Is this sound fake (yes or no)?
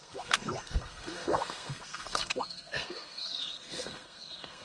yes